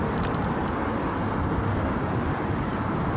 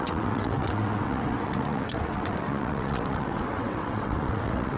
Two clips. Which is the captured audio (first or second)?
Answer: first